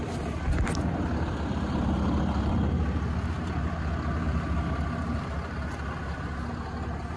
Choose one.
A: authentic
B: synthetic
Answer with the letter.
A